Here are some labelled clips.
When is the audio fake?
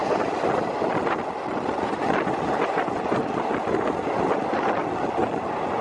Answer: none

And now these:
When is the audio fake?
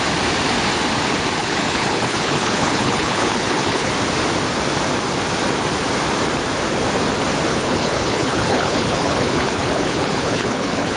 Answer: 1.4-3.9 (codec, HILCodec); 7.5-11.0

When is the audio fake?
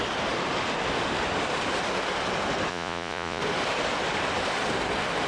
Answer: 2.7-3.4 (vocoder, Vocos)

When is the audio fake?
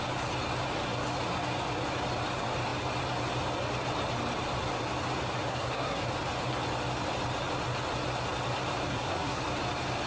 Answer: 5.5-6.0 (codec, SNAC); 8.9-9.4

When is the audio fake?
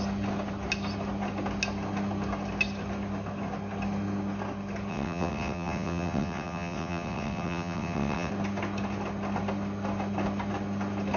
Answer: 4.9-8.3 (vocoder, WaveNeXt)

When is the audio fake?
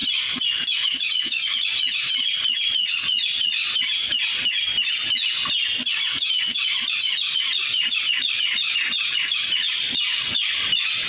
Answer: 0.0-3.6 (vocoder, Vocos); 5.9-11.1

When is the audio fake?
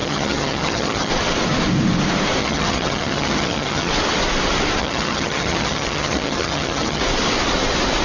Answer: 0.0-1.1 (vocoder, HiFi-GAN); 2.4-3.9; 4.8-7.0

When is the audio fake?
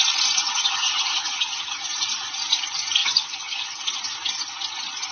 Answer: 0.4-1.8 (vocoder, HiFi-GAN); 3.0-3.8